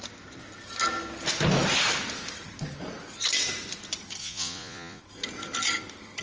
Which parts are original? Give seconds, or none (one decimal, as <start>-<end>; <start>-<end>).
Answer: 0.0-4.2; 5.0-6.2